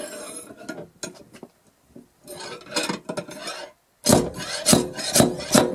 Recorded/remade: recorded